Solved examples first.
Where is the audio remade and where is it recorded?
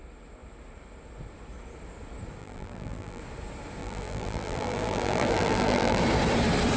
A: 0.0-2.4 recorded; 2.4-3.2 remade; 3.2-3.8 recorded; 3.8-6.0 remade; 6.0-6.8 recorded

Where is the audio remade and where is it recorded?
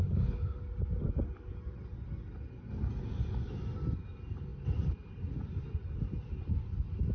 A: 0.0-0.6 remade; 0.6-7.1 recorded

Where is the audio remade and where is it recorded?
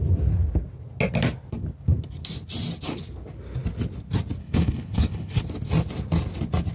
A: 0.0-4.4 recorded; 4.4-5.4 remade; 5.4-6.7 recorded